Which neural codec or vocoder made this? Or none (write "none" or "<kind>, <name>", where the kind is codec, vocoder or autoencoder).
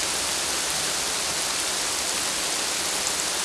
none